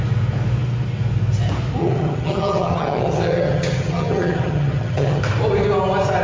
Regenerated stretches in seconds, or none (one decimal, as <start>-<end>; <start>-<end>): 1.8-5.2